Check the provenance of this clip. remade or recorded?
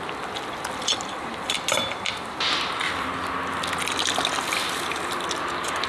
recorded